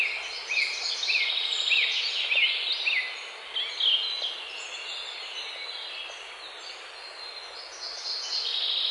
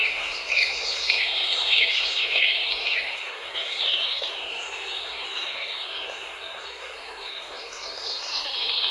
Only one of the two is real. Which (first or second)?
first